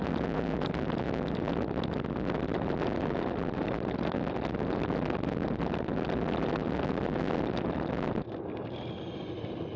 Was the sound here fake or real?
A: real